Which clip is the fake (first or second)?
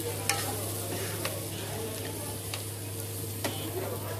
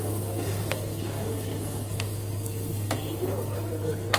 second